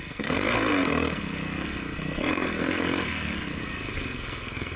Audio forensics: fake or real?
fake